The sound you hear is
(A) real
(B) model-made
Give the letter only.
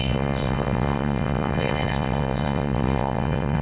B